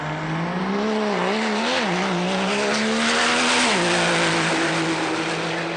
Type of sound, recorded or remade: recorded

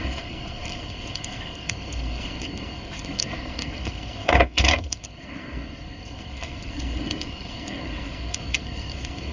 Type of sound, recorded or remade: remade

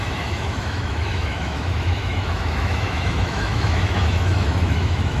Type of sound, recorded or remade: remade